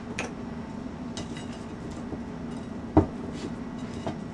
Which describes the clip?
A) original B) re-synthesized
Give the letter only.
A